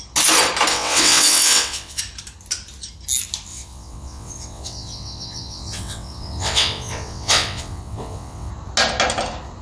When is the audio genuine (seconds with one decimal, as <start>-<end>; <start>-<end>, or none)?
0.0-0.7; 2.0-3.5; 8.5-9.6